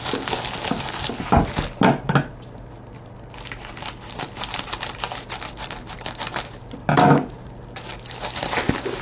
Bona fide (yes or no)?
yes